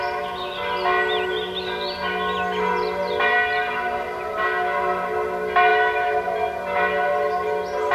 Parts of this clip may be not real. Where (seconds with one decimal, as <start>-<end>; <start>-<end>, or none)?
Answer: 5.7-6.3